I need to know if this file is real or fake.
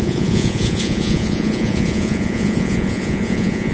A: fake